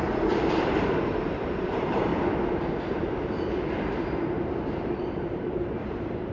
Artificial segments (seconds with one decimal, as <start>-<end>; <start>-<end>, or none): 0.5-2.1; 4.6-6.3